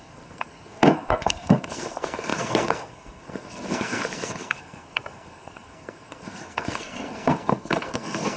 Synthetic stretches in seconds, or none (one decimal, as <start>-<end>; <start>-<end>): 0.0-8.4